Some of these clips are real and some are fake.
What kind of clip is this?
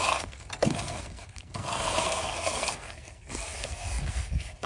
fake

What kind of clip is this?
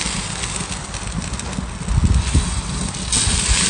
real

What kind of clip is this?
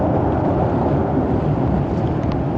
real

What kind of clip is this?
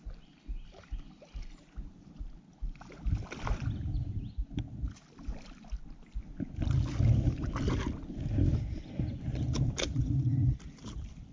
real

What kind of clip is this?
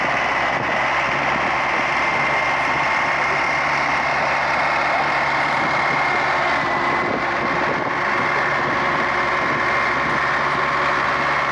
real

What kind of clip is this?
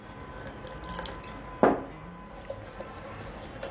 real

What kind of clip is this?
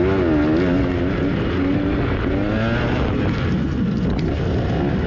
real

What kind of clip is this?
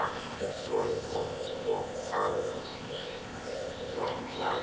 fake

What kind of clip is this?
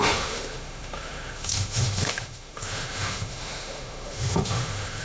fake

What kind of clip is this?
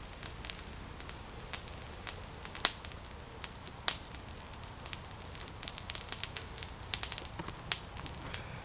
real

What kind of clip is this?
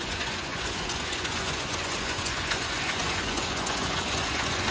fake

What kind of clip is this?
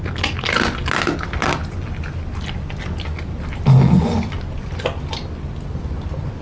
real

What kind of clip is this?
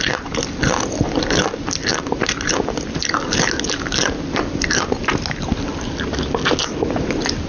real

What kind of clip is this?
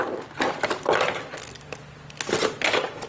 real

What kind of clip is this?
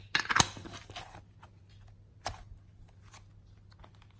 real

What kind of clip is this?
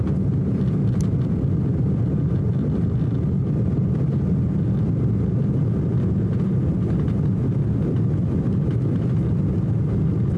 real